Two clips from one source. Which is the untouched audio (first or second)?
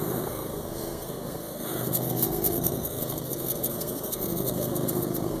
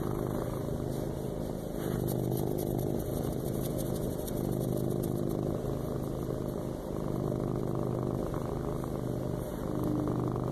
second